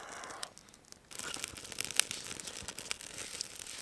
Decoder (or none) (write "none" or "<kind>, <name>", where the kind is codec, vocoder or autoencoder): none